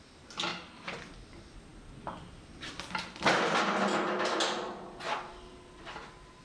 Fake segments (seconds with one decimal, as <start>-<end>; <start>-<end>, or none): none